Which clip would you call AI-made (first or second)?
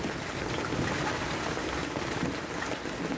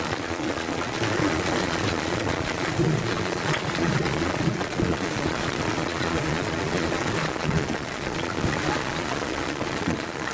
second